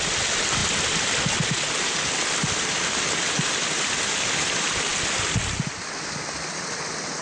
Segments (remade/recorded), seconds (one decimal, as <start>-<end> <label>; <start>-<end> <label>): 0.0-7.2 recorded